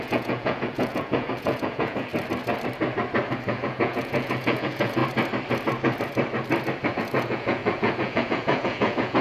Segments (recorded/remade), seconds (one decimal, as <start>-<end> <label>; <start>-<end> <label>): 0.0-2.1 remade; 2.1-3.5 recorded; 3.5-5.0 remade; 5.0-6.9 recorded; 6.9-9.2 remade